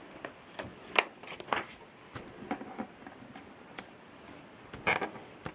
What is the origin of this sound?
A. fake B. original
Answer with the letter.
B